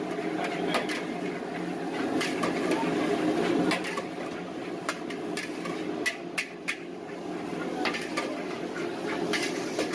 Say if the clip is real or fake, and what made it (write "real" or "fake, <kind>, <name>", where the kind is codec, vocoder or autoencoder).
real